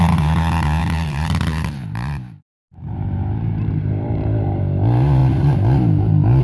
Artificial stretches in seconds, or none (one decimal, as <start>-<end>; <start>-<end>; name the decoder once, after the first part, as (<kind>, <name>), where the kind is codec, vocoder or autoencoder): 0.8-4.6 (vocoder, BigVGAN v2)